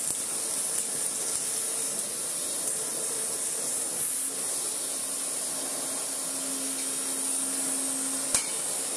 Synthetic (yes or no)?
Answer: no